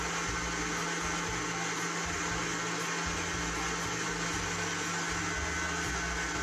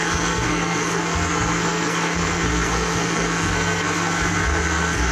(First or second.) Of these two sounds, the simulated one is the second